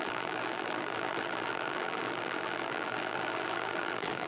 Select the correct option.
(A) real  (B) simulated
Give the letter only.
B